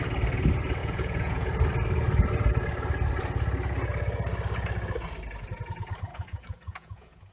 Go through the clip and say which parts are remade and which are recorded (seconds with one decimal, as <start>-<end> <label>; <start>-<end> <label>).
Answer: 0.0-0.8 recorded; 0.8-1.5 remade; 1.5-6.1 recorded; 6.1-7.3 remade